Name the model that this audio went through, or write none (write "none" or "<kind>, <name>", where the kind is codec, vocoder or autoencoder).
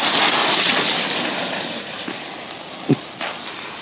none